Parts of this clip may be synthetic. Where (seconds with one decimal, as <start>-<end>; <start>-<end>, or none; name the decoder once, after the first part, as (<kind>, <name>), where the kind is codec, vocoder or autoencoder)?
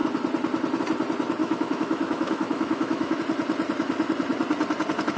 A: 1.4-3.2 (autoencoder, DAC-VAE)